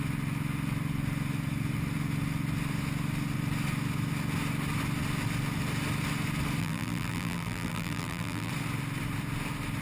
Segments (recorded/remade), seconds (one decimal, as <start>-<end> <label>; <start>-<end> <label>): 0.0-6.6 recorded; 6.6-8.5 remade; 8.5-9.8 recorded